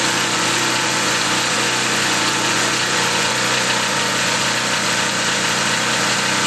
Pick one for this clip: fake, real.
fake